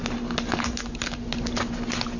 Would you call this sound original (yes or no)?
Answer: yes